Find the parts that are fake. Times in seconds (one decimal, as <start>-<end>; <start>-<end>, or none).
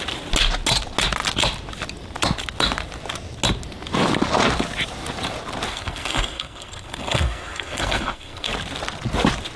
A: 5.7-8.5